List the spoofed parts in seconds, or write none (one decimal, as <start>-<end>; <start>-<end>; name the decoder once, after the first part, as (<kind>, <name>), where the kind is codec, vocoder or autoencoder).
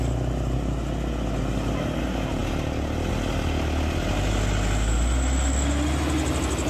none